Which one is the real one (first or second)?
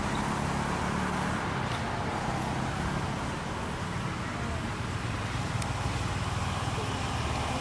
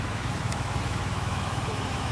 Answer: first